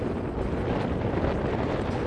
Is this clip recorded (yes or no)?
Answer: yes